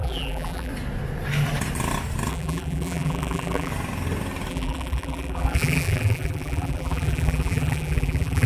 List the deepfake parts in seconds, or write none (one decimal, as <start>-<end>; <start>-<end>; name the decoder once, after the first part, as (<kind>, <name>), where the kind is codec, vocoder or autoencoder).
0.0-0.7 (vocoder, BigVGAN v2); 2.3-3.7; 4.5-8.5